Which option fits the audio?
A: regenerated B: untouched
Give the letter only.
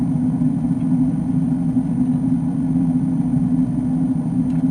B